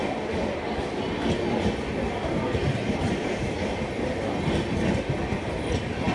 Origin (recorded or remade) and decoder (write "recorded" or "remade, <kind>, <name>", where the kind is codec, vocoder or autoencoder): recorded